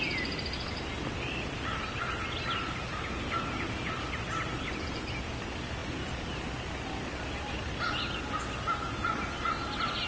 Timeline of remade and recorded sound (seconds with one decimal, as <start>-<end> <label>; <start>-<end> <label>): 0.0-10.1 recorded